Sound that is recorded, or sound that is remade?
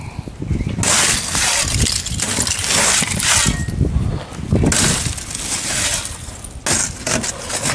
recorded